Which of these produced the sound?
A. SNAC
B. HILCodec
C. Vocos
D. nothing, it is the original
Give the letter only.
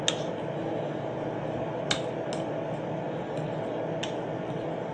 D